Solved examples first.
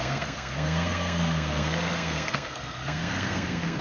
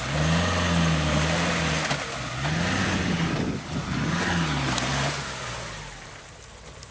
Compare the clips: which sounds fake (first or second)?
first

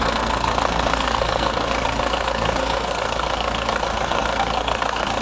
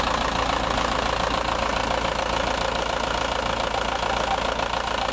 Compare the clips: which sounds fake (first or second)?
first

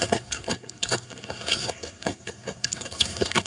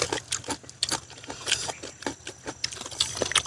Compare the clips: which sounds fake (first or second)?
first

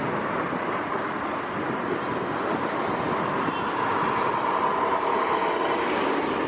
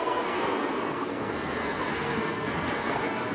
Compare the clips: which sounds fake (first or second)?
second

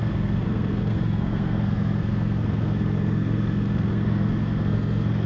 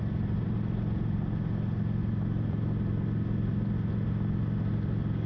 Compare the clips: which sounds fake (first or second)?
first